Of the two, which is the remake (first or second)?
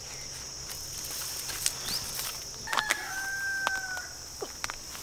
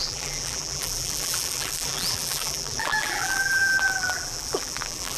second